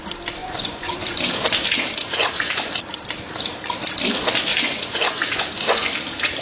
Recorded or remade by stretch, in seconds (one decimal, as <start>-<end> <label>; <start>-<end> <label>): 0.0-0.4 recorded; 0.4-1.4 remade; 1.4-2.0 recorded; 2.0-2.7 remade; 2.7-4.5 recorded; 4.5-5.9 remade; 5.9-6.4 recorded